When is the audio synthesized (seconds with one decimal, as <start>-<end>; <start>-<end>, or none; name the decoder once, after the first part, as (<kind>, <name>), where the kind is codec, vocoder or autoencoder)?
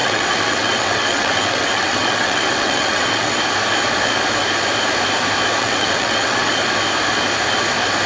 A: 0.0-3.3 (vocoder, WaveNeXt); 5.6-6.5